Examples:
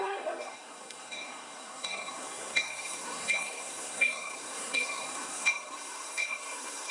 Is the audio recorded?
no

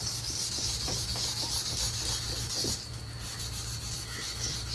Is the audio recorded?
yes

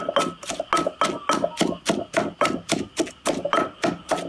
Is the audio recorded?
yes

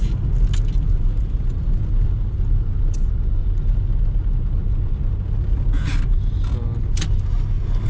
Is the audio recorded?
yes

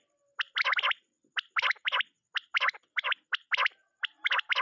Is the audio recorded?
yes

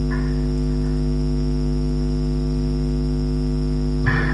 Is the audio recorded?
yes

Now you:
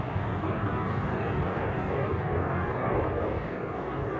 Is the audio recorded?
no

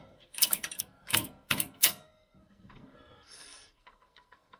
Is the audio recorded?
no